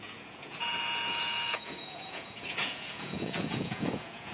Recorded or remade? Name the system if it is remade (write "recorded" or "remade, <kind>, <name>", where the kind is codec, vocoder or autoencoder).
remade, vocoder, Vocos